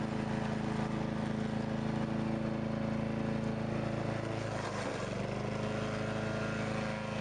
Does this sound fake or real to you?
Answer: real